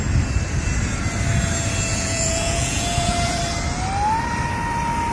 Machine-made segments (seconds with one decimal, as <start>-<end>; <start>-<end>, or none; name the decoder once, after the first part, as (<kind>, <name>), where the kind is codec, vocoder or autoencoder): 1.9-3.4 (vocoder, Vocos)